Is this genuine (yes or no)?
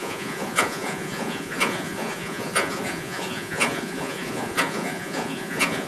no